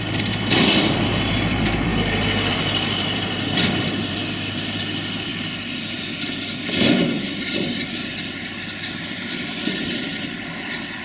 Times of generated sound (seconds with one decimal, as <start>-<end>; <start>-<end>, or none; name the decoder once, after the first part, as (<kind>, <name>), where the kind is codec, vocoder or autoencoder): 0.0-1.9 (vocoder, BigVGAN v2); 2.5-11.0